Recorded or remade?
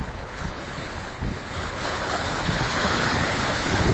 remade